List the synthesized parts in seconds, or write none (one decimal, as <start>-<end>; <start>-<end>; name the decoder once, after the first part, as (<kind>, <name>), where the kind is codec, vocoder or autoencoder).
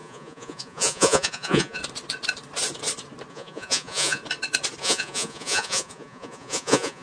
0.0-1.8 (vocoder, Vocos); 3.3-4.2; 4.8-7.0